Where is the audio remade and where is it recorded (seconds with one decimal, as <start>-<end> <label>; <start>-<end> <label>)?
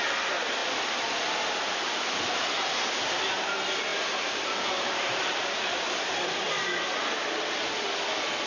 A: 0.0-0.6 recorded; 0.6-2.3 remade; 2.3-3.9 recorded; 3.9-7.7 remade; 7.7-8.5 recorded